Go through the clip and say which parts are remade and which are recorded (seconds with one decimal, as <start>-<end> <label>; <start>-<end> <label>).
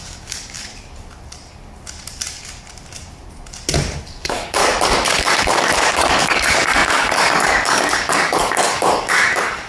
0.0-0.7 remade; 0.7-4.1 recorded; 4.1-4.6 remade; 4.6-5.2 recorded; 5.2-9.7 remade